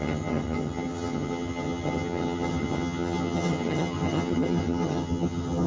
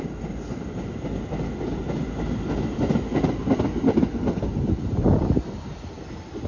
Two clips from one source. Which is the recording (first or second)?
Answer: second